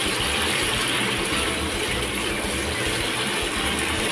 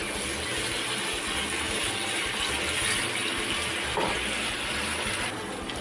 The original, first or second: second